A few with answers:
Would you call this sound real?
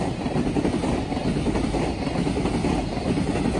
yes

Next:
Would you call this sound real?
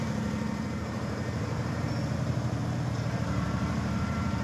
no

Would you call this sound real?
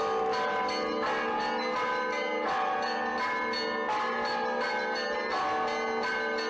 yes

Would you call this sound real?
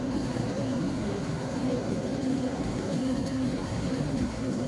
no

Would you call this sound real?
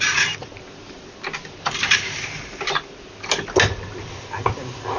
yes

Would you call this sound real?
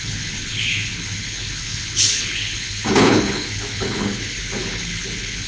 no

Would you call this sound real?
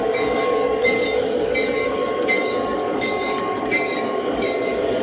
no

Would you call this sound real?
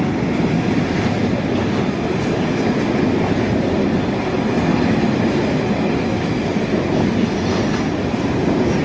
yes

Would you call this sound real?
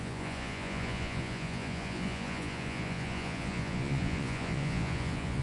no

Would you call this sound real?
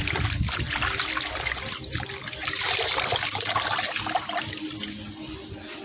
yes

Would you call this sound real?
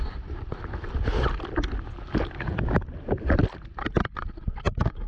yes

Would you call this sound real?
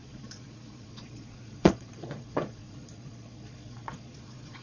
no